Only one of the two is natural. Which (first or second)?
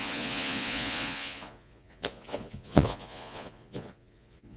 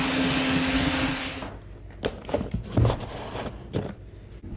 second